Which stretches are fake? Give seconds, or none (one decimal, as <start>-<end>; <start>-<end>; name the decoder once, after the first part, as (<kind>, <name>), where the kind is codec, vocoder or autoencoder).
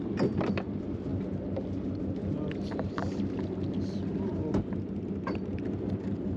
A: 0.0-1.1 (vocoder, BigVGAN v2); 2.0-3.0; 3.8-6.4